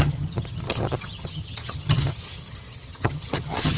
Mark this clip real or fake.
fake